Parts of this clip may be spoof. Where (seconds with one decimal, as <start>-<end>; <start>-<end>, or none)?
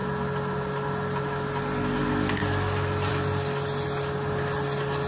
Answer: none